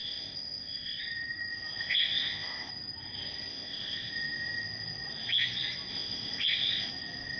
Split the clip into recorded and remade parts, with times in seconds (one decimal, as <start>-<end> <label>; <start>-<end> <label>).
0.0-1.0 remade; 1.0-1.8 recorded; 1.8-2.7 remade; 2.7-3.5 recorded; 3.5-4.1 remade; 4.1-5.9 recorded; 5.9-6.9 remade; 6.9-7.4 recorded